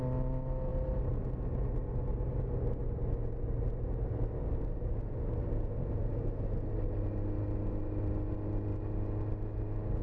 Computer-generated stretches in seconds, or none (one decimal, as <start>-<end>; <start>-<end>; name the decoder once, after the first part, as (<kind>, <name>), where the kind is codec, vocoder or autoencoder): none